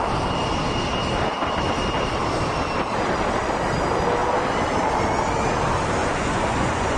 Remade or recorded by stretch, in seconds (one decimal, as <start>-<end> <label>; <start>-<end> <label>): 0.0-6.0 recorded; 6.0-7.0 remade